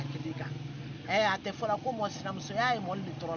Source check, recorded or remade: recorded